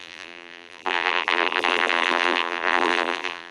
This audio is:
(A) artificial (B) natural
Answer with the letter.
A